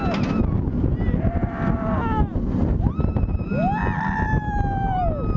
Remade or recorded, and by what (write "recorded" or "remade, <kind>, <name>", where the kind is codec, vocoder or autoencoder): recorded